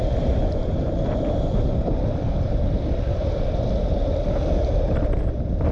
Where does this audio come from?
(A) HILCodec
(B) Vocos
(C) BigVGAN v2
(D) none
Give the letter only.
C